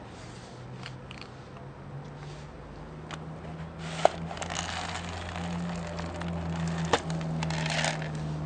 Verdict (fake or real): real